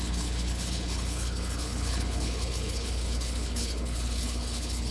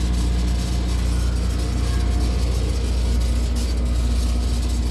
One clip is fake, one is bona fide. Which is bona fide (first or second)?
second